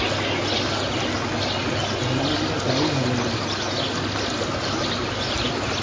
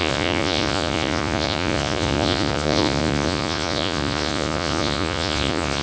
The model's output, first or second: second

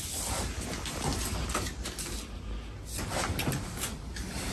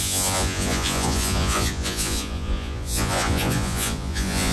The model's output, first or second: second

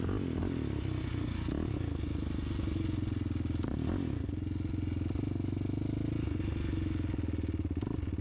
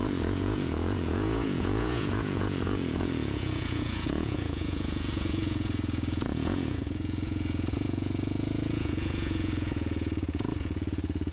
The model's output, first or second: second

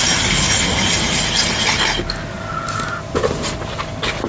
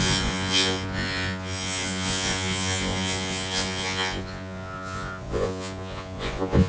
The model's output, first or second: second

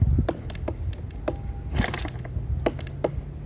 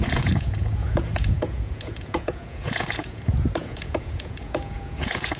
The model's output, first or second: second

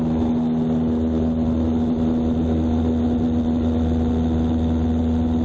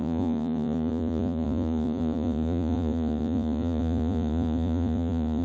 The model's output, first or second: second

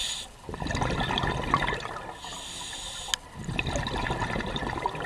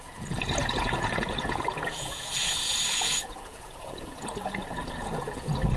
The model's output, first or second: second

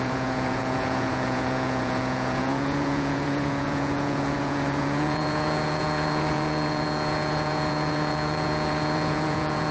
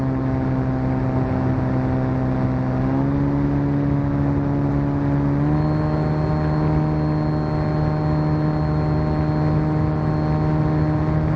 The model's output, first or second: first